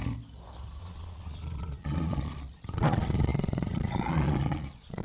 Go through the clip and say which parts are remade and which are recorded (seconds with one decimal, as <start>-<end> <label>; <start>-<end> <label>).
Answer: 0.0-0.8 recorded; 0.8-5.0 remade